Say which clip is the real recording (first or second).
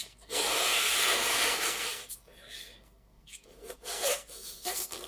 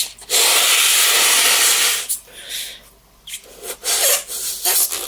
second